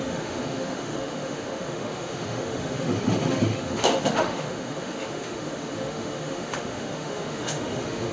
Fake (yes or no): yes